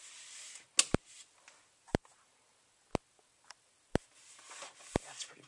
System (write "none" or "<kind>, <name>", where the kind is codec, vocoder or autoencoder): none